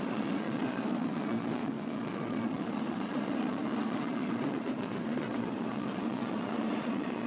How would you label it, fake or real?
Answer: fake